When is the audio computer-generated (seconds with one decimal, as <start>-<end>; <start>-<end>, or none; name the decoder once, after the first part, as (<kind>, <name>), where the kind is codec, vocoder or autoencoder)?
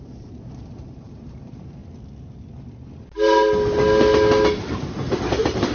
0.0-1.8 (vocoder, BigVGAN v2); 5.2-5.7